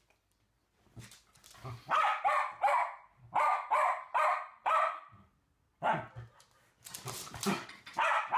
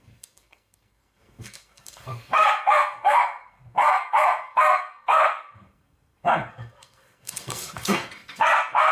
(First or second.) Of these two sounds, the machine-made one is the second